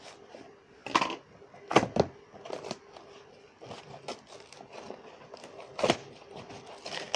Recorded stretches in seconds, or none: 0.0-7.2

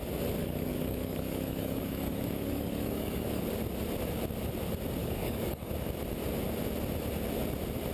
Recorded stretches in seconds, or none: 0.0-0.4; 3.4-5.0; 5.7-7.9

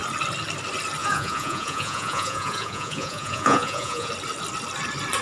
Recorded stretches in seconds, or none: 0.0-1.0; 4.1-5.2

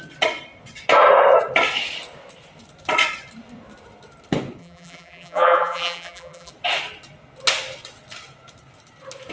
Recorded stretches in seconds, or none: 0.0-4.6; 6.5-9.3

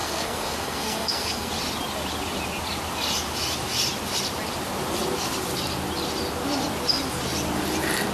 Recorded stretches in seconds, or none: 1.5-8.1

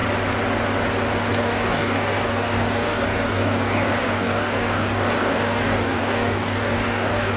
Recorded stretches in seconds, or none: 0.0-1.3

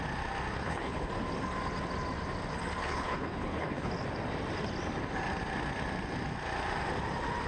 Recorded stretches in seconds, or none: 0.0-0.6; 1.1-2.8; 3.9-7.5

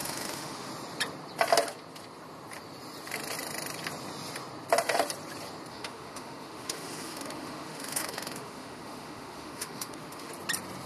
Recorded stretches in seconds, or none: 0.7-5.7; 10.3-10.9